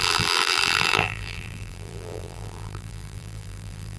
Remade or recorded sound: remade